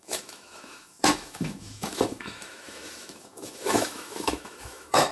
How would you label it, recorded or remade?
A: remade